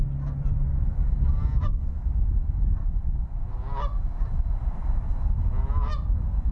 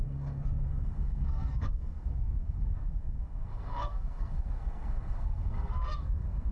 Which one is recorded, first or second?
first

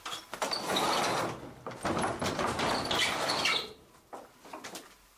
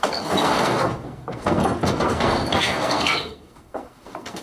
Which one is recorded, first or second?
first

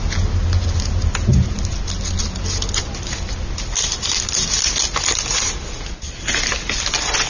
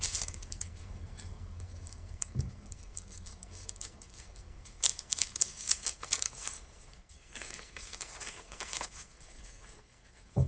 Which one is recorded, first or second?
first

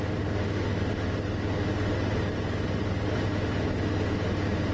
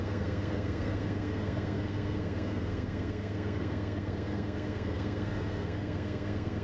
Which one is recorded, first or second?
first